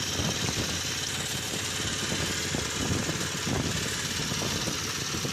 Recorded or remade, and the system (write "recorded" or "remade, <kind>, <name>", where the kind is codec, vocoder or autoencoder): remade, vocoder, BigVGAN v2